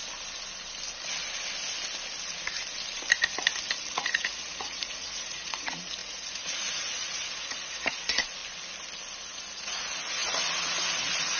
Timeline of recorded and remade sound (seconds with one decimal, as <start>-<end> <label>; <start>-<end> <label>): 0.0-3.9 recorded; 3.9-8.4 remade; 8.4-9.5 recorded; 9.5-11.4 remade